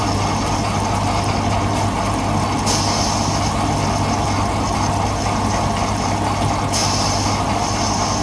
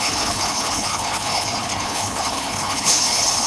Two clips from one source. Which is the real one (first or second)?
first